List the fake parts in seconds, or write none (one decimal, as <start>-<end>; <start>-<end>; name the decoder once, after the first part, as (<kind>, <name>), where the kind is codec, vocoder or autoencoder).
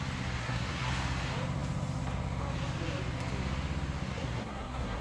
0.4-0.9 (codec, SNAC); 4.1-5.0